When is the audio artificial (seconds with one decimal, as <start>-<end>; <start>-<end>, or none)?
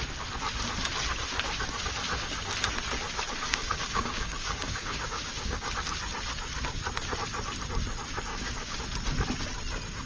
3.5-5.7; 8.3-8.8